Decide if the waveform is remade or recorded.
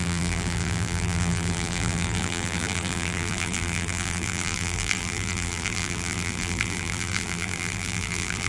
remade